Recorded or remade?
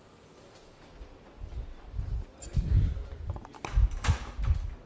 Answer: recorded